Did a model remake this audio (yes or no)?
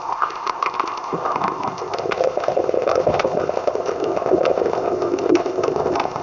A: yes